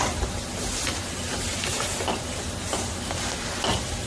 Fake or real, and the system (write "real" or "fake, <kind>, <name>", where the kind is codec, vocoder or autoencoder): real